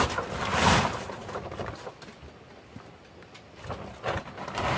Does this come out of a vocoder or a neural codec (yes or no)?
no